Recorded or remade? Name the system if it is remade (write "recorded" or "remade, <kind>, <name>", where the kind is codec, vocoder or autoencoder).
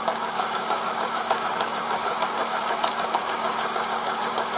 remade, codec, DAC